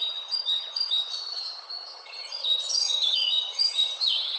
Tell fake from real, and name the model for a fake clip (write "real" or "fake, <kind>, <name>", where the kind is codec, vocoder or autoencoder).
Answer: fake, vocoder, HiFi-GAN